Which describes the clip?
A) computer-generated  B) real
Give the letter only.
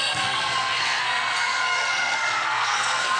A